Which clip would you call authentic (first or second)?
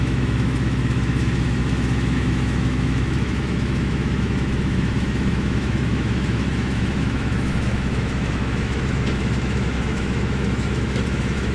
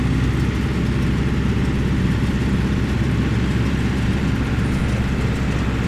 second